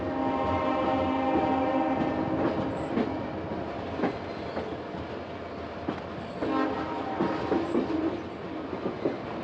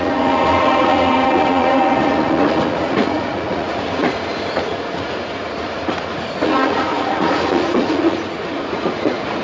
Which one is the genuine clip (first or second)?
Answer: first